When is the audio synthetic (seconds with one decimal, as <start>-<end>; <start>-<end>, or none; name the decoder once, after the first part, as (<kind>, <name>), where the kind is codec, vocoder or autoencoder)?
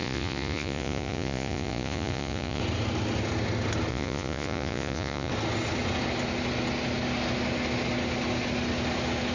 0.0-2.6 (vocoder, Vocos); 3.9-5.3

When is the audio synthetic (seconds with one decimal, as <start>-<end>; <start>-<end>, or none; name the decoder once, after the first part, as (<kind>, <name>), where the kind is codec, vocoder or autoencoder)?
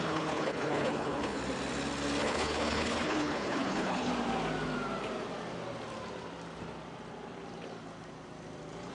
0.0-1.4 (codec, HILCodec); 2.2-4.1